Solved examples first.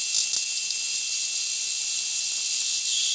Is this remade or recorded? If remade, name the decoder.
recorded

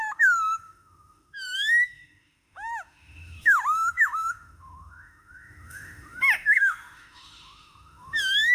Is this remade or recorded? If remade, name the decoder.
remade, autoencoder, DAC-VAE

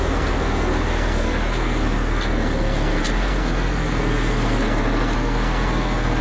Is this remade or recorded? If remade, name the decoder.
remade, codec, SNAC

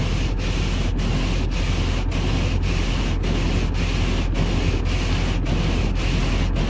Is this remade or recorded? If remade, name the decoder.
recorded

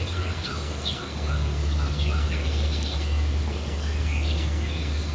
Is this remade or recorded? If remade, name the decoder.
remade, codec, SNAC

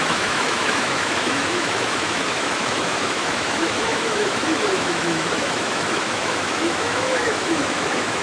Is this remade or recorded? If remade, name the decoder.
remade, autoencoder, DAC-VAE